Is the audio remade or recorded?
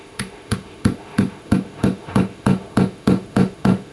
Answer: remade